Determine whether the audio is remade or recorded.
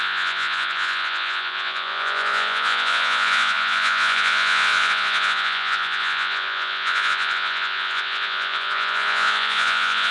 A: remade